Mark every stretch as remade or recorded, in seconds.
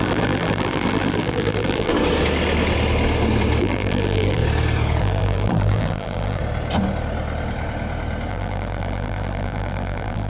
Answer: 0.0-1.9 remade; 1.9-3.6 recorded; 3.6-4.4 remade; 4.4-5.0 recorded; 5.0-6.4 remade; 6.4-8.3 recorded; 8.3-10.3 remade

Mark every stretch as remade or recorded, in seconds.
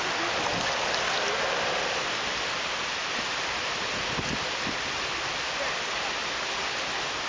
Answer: 0.0-7.3 recorded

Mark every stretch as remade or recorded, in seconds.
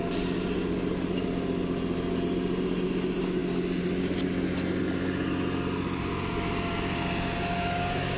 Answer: 0.0-8.2 recorded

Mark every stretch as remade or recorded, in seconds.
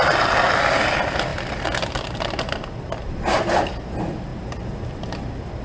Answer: 0.0-5.6 recorded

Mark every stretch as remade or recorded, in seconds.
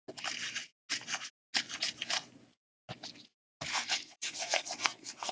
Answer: 0.0-3.7 recorded; 3.7-5.3 remade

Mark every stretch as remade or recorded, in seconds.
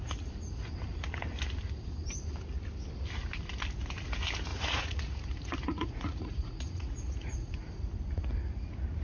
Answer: 0.0-4.5 recorded; 4.5-7.7 remade; 7.7-9.0 recorded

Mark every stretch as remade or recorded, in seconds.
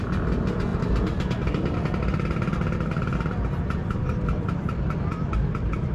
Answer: 0.0-5.9 recorded